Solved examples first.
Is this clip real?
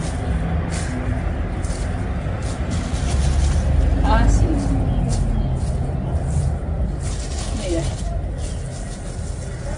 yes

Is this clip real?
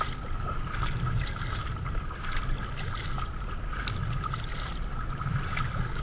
yes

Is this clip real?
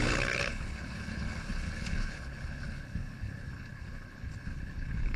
no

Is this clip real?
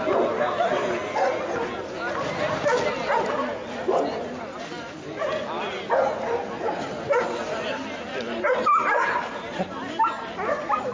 yes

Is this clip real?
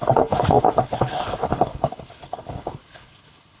no